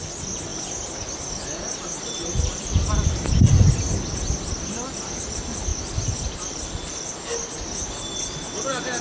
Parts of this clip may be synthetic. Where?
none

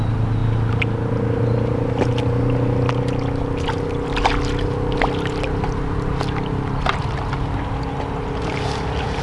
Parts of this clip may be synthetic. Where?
none

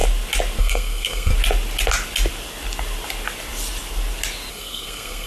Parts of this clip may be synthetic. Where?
0.6-1.3 (codec, SNAC); 4.5-5.3